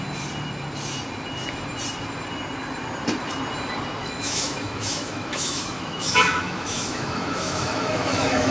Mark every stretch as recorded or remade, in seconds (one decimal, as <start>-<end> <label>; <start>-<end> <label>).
0.0-4.0 recorded; 4.0-8.5 remade